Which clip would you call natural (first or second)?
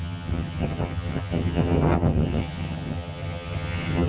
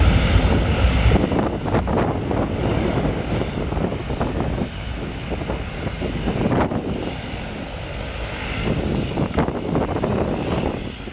second